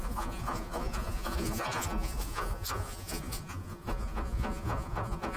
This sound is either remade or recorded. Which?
remade